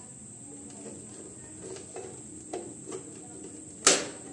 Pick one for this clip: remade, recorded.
recorded